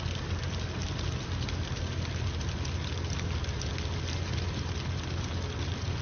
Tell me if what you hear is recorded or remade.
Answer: recorded